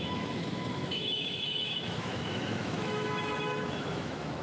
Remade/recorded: remade